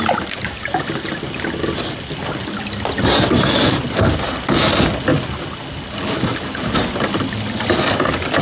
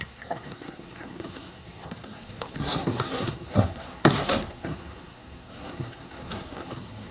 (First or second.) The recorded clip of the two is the first